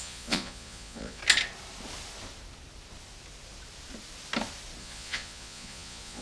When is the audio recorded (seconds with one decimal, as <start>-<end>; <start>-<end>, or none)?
1.2-4.8